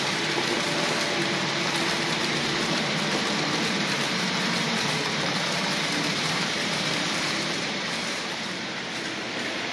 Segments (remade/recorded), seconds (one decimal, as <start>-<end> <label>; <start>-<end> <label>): 0.0-0.5 remade; 0.5-2.1 recorded; 2.1-9.7 remade